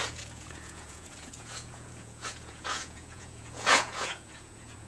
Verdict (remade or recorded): remade